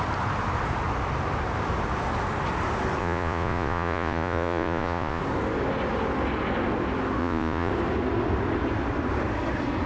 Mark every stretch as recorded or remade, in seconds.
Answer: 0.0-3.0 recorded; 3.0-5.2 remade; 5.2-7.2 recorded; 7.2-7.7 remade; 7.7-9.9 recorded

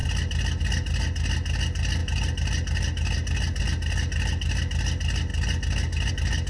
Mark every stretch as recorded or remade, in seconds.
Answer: 0.0-6.5 recorded

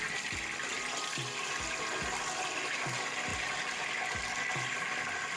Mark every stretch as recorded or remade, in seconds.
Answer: 0.0-5.4 recorded